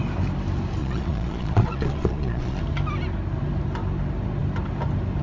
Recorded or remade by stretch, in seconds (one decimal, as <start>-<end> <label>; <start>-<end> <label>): 0.0-0.8 recorded; 0.8-2.6 remade; 2.6-5.2 recorded